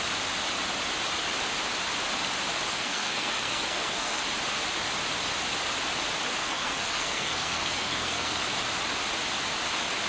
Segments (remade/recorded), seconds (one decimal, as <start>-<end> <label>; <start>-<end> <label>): 0.0-2.7 recorded; 2.7-4.2 remade; 4.2-6.4 recorded; 6.4-8.4 remade; 8.4-10.1 recorded